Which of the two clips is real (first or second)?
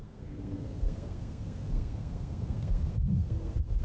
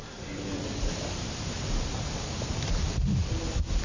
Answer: second